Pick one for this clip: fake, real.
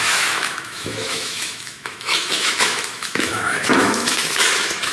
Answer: fake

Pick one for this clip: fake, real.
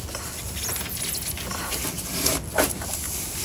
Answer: real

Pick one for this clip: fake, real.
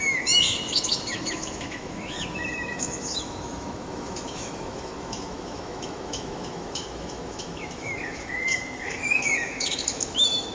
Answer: fake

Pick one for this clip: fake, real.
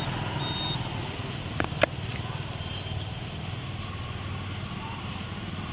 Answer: real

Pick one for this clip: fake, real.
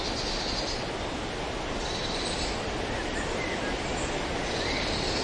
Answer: real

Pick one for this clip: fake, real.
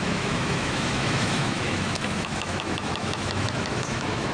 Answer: fake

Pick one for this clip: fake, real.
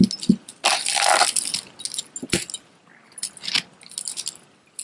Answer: real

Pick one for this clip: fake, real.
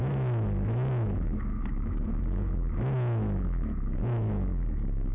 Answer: fake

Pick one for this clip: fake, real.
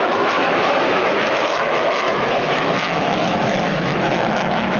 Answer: fake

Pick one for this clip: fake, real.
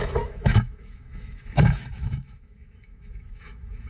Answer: fake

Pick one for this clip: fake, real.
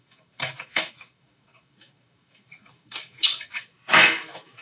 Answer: fake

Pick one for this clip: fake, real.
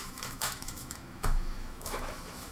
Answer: fake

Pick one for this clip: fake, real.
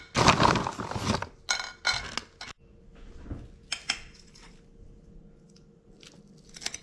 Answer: real